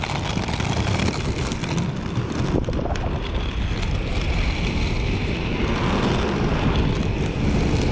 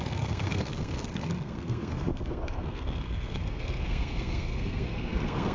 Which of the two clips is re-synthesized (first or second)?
second